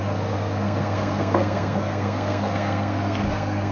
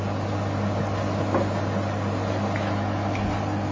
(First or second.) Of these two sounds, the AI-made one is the first